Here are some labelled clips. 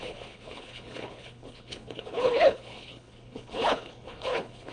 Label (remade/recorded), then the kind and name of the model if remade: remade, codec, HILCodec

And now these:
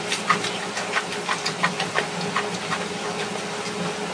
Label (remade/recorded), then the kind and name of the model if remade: recorded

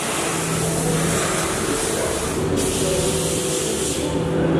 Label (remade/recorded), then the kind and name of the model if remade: recorded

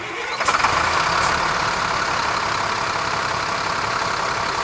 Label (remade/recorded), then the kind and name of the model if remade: recorded